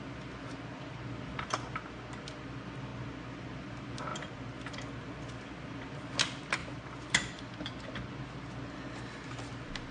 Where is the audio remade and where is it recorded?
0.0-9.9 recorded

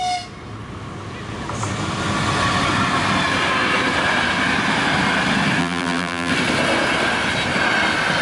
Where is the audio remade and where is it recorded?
0.0-5.6 recorded; 5.6-6.3 remade; 6.3-8.2 recorded

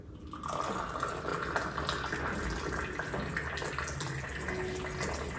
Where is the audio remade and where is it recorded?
0.0-5.4 recorded

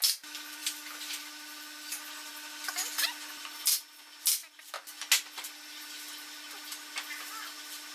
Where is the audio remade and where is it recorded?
0.0-7.9 recorded

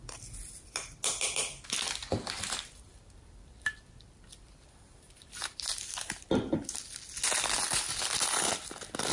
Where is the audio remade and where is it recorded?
0.0-2.0 recorded; 2.0-6.8 remade; 6.8-9.1 recorded

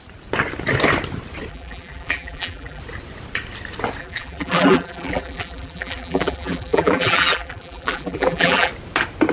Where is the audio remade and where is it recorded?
0.0-1.5 recorded; 1.5-2.8 remade; 2.8-4.0 recorded; 4.0-8.7 remade; 8.7-9.3 recorded

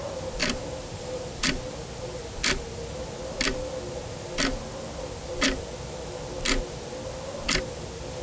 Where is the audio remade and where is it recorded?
0.0-0.4 recorded; 0.4-1.3 remade; 1.3-8.2 recorded

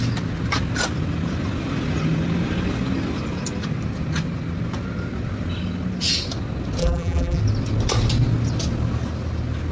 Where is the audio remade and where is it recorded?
0.0-6.8 recorded; 6.8-7.4 remade; 7.4-9.7 recorded